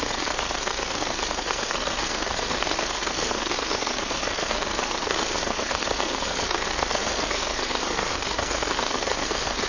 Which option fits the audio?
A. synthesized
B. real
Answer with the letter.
A